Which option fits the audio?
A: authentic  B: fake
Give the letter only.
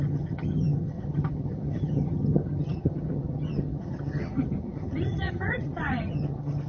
B